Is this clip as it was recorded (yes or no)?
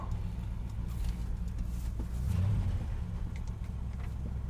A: yes